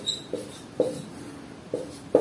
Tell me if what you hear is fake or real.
real